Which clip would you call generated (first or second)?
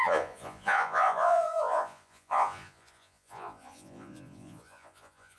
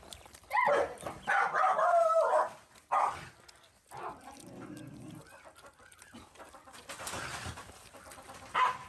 first